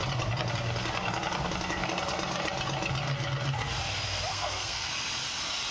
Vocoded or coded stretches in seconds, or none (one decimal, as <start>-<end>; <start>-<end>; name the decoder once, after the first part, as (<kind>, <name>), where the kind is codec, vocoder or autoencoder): 4.3-4.9 (codec, SNAC)